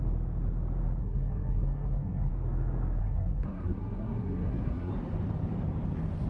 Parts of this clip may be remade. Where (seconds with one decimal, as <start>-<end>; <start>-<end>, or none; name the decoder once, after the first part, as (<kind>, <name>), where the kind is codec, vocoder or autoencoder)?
1.0-2.3 (codec, SNAC); 3.0-4.9